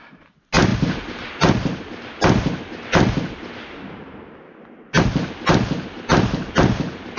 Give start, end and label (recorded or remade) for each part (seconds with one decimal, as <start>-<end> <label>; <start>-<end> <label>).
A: 0.0-7.2 recorded